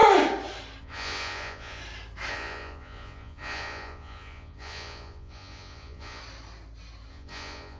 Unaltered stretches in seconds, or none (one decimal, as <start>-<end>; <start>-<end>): 0.0-0.8; 1.8-2.3; 6.2-7.1